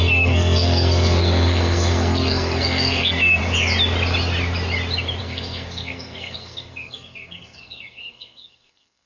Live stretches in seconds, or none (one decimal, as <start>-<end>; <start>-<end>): 3.4-5.2